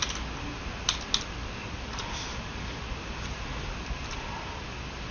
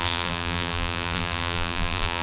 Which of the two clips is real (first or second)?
first